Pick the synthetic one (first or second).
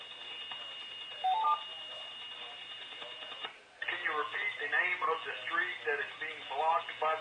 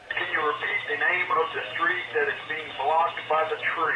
second